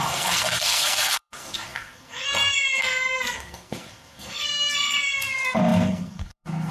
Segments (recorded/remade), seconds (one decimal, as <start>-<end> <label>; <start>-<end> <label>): 0.0-6.7 remade